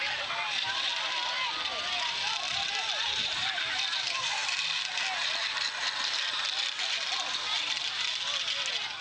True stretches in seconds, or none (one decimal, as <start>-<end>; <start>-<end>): 0.0-9.0